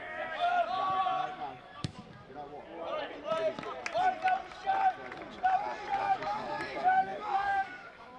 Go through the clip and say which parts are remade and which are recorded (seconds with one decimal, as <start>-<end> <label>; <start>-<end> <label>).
0.0-0.5 remade; 0.5-1.3 recorded; 1.3-2.0 remade; 2.0-6.0 recorded; 6.0-8.2 remade